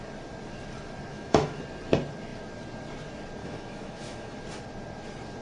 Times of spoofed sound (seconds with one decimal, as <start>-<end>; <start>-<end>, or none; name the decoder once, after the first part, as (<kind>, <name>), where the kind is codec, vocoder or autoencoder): 1.1-1.6 (autoencoder, DAC-VAE); 3.4-4.4